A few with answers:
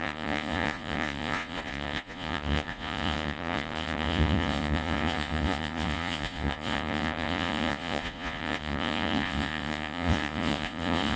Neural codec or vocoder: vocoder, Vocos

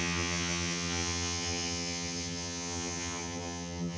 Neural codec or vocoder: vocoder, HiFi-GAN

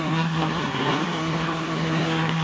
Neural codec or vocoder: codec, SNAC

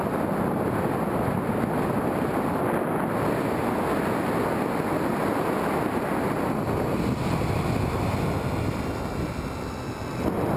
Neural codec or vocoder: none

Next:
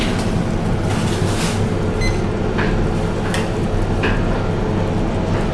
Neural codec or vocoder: none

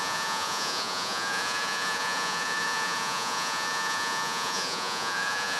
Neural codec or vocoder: vocoder, Vocos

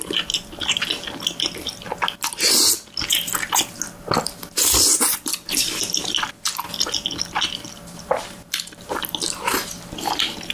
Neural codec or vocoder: none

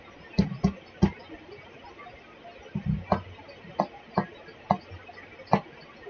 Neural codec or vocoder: none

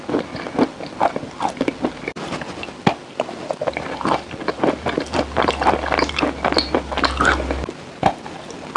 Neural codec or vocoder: none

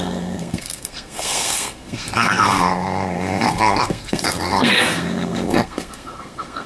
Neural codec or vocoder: codec, SNAC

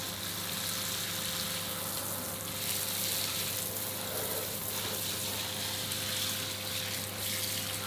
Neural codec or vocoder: none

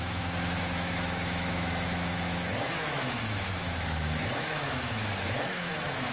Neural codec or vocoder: autoencoder, DAC-VAE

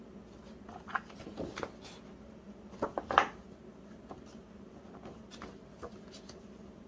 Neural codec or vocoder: none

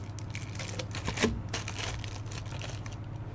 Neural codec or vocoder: none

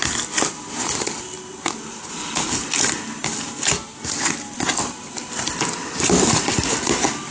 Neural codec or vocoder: none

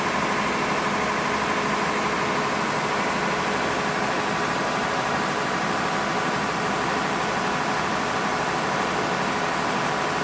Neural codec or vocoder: none